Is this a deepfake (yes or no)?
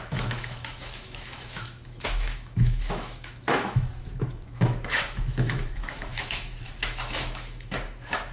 yes